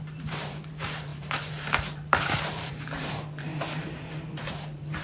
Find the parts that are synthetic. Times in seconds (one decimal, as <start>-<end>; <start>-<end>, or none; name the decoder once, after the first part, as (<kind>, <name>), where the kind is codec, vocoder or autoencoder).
0.0-3.5 (vocoder, BigVGAN v2); 4.5-5.0